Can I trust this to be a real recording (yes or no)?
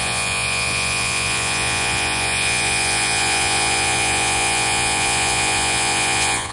no